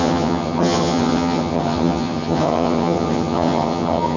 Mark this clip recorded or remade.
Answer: remade